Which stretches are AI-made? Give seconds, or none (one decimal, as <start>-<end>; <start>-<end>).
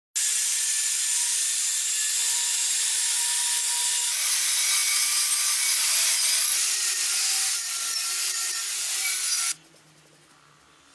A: none